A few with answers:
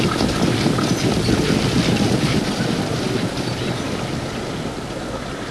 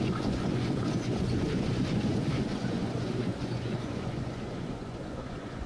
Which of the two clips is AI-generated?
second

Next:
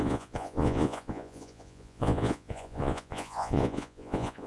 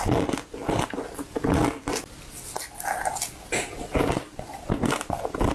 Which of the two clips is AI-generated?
first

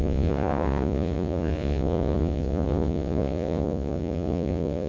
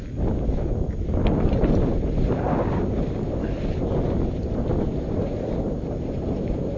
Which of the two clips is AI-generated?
first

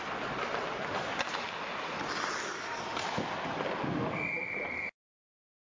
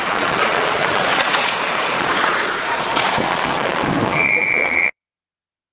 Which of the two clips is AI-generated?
second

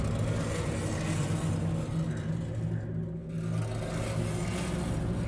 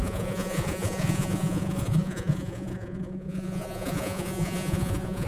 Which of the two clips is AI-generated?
second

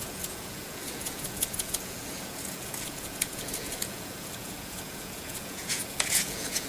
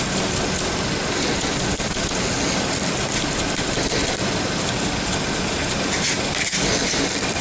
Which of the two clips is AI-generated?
first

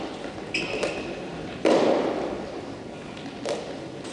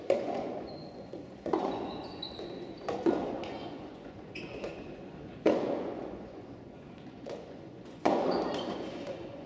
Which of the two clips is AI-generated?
second